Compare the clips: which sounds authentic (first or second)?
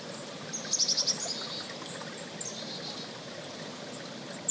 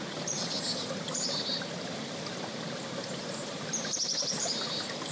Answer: first